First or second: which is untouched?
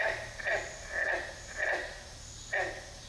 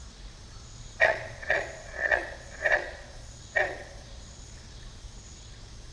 first